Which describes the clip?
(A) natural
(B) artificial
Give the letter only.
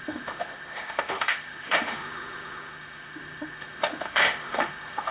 B